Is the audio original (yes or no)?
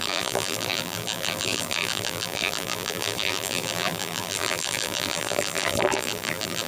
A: no